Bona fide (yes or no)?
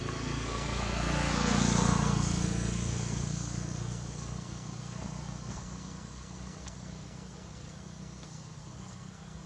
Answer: no